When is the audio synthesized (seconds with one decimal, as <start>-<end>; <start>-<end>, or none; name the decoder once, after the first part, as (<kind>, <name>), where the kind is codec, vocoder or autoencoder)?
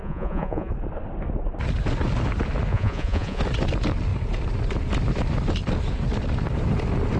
0.0-0.7 (vocoder, Vocos); 2.7-3.4